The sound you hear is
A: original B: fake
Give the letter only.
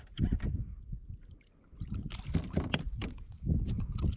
A